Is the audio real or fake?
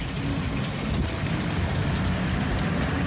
real